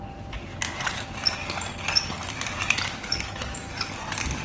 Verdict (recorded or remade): recorded